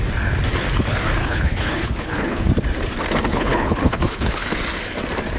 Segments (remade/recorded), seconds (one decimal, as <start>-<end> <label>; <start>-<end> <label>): 0.0-1.2 recorded; 1.2-2.5 remade; 2.5-3.3 recorded; 3.3-4.4 remade; 4.4-5.4 recorded